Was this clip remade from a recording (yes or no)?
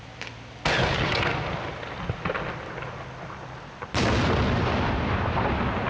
no